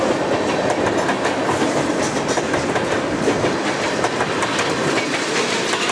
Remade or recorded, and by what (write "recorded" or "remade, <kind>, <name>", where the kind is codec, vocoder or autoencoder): recorded